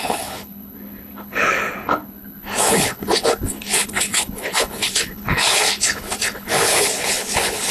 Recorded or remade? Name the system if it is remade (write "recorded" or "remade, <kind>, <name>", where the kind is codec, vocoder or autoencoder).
remade, codec, HILCodec